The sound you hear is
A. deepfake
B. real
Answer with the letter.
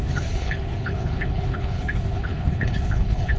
A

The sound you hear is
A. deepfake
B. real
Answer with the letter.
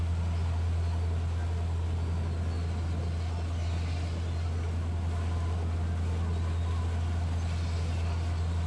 B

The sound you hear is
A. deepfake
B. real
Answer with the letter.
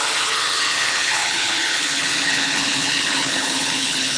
A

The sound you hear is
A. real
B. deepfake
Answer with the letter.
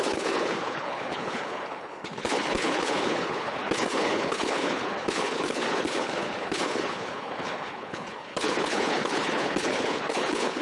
B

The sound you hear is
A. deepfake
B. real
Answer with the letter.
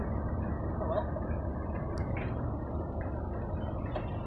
B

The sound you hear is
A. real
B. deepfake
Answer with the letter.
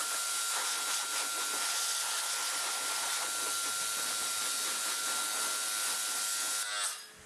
A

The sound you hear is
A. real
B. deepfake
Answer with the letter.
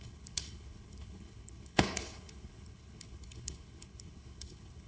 B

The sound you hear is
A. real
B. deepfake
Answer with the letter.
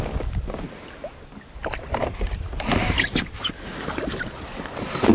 A